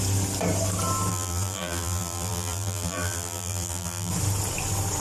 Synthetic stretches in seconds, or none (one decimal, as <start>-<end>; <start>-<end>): 1.1-4.1